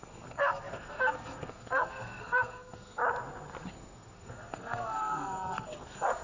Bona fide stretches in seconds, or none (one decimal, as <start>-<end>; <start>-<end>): 3.0-3.7